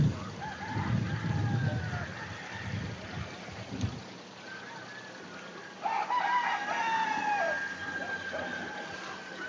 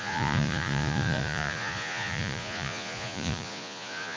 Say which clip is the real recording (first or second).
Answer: first